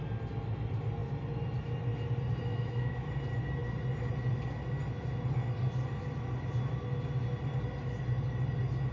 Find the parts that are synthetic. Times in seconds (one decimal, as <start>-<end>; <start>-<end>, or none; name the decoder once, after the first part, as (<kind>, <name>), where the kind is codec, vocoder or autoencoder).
2.5-3.1 (autoencoder, DAC-VAE)